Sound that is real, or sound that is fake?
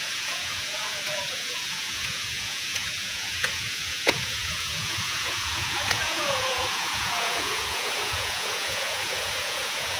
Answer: fake